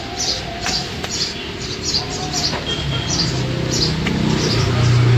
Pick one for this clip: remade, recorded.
recorded